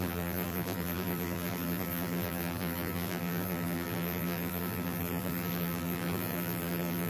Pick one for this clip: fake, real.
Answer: fake